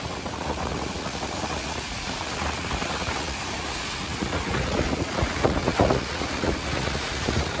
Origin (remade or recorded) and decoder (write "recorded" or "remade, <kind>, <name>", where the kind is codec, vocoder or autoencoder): remade, vocoder, Vocos